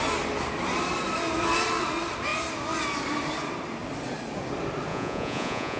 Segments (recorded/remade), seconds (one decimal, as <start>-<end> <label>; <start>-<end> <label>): 0.0-4.9 recorded; 4.9-5.8 remade